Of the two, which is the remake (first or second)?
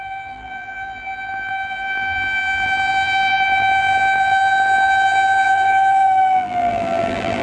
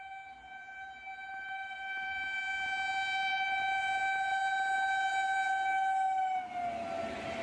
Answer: first